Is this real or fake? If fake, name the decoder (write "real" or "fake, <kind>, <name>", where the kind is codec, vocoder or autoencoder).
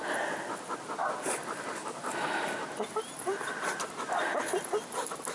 real